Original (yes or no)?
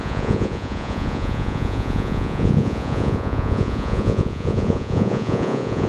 no